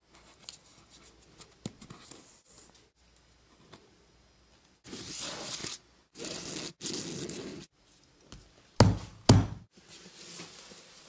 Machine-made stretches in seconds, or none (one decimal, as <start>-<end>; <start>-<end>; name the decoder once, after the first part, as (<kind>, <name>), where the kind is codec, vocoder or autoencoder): none